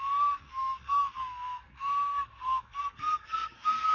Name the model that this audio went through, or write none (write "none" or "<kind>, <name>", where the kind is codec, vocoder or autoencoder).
codec, SNAC